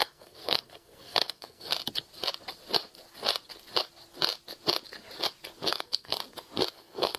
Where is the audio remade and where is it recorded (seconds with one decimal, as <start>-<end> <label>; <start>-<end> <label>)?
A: 0.0-1.7 remade; 1.7-5.7 recorded; 5.7-6.2 remade; 6.2-6.7 recorded; 6.7-7.2 remade